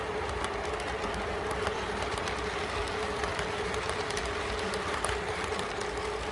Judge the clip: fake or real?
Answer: real